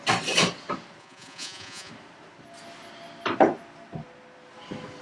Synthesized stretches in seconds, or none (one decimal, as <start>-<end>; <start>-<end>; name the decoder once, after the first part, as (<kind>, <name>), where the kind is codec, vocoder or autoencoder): 1.0-1.9 (vocoder, Vocos)